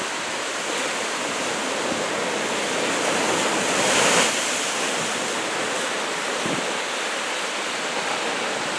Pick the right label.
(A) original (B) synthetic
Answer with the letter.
A